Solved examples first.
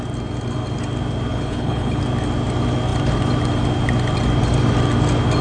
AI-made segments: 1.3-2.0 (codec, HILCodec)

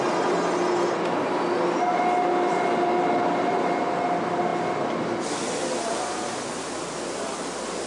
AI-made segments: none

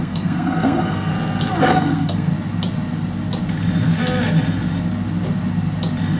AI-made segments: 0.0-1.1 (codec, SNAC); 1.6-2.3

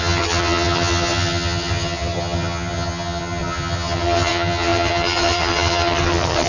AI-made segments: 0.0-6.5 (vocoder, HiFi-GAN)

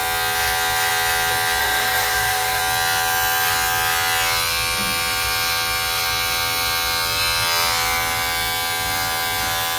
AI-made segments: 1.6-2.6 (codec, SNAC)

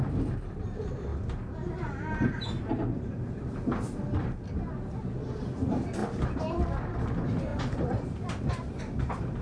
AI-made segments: 7.5-8.8 (vocoder, BigVGAN v2)

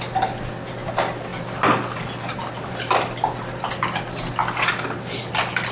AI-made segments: none